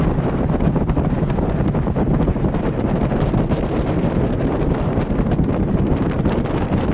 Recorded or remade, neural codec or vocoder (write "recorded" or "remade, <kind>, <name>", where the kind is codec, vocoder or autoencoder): recorded